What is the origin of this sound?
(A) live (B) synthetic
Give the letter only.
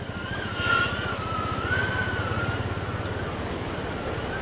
A